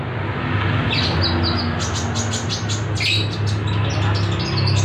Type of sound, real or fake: real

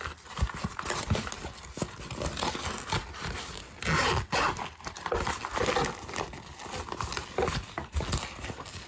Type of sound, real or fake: real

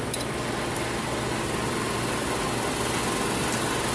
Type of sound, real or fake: real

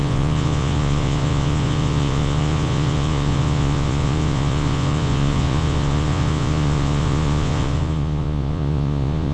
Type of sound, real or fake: fake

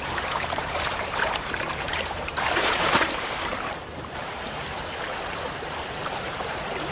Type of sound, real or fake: fake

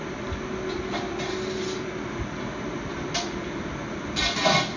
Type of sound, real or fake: real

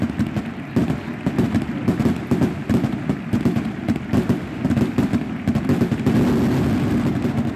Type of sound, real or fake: real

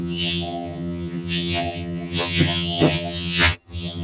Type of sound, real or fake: fake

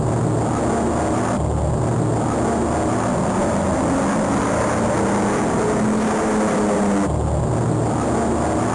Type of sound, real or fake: real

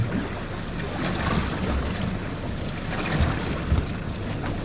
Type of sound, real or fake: real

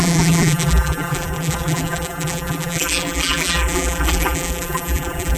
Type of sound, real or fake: fake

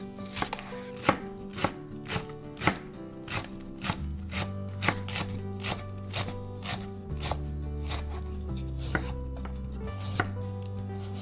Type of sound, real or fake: real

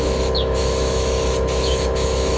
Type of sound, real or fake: fake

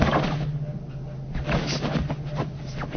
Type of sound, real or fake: real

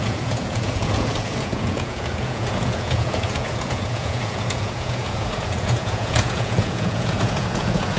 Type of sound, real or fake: fake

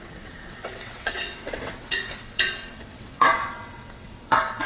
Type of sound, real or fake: fake